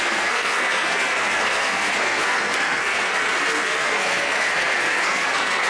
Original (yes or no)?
no